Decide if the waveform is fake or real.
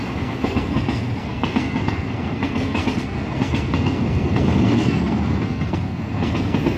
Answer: fake